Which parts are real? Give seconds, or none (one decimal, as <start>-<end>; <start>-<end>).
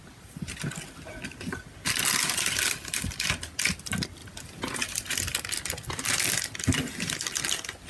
0.0-7.9